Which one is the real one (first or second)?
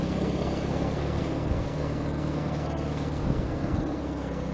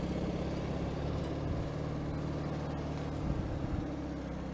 second